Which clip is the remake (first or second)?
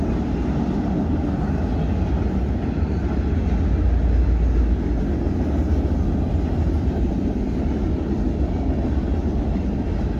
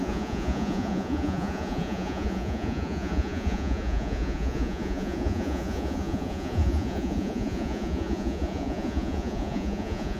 second